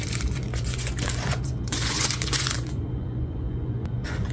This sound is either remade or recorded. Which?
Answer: remade